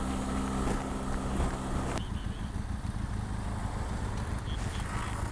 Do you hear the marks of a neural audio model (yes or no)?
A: no